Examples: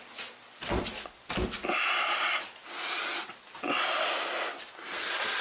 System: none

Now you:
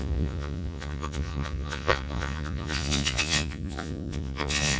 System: vocoder, Vocos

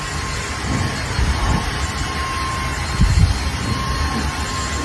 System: none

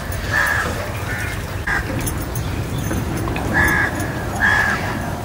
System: vocoder, BigVGAN v2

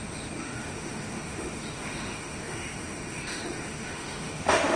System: autoencoder, DAC-VAE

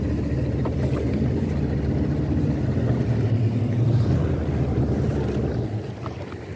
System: none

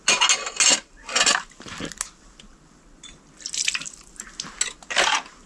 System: none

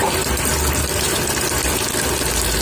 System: none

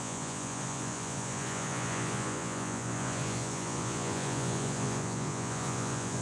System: vocoder, Vocos